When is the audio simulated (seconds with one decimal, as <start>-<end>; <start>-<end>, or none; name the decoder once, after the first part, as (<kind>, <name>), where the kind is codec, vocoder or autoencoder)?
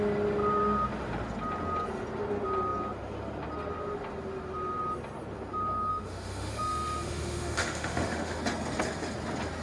5.9-8.4 (autoencoder, DAC-VAE)